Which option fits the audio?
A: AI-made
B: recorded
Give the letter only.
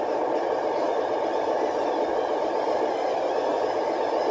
A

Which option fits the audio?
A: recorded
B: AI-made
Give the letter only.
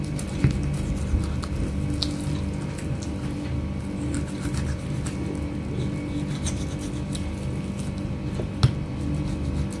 A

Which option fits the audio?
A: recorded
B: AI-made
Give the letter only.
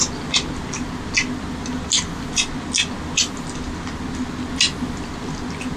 A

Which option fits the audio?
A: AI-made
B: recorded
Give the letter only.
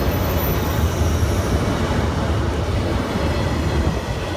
B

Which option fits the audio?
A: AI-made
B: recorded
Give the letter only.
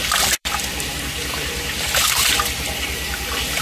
A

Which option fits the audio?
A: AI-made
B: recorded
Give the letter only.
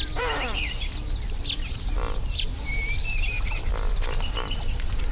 A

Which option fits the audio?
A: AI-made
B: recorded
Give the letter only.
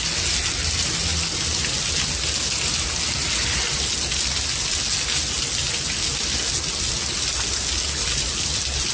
B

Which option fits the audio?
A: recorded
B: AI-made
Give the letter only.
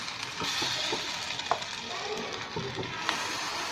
A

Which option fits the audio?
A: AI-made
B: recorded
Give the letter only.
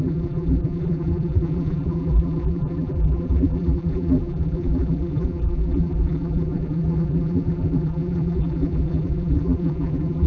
A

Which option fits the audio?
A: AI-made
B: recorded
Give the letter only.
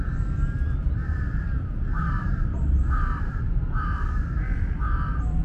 A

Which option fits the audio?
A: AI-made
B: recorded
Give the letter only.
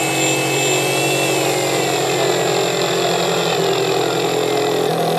B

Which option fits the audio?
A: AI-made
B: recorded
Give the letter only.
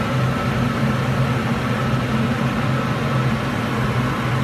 B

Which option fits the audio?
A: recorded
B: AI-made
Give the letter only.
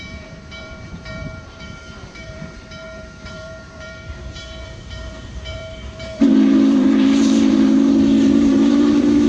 B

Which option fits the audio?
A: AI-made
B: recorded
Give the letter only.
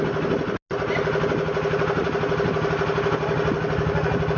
B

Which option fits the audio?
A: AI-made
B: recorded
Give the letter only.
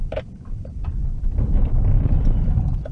A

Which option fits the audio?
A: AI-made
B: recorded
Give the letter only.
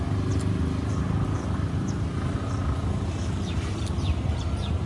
B